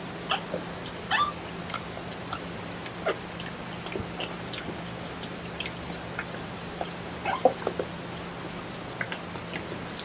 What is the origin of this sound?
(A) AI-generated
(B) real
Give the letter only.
B